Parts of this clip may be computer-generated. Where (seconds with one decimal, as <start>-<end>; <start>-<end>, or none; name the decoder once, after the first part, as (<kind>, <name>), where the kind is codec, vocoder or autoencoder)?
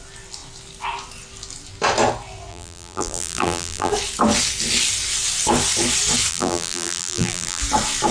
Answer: 2.5-3.9 (vocoder, BigVGAN v2); 6.3-7.6